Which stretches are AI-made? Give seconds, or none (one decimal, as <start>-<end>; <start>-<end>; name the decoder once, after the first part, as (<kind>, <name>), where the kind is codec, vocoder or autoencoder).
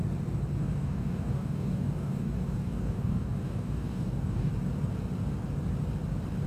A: 0.6-4.5 (codec, DAC)